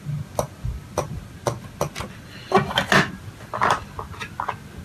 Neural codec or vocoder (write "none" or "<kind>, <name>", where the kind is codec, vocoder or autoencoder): none